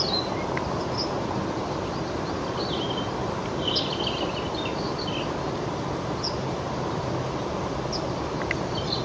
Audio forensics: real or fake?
real